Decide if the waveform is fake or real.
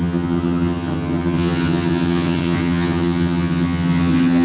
fake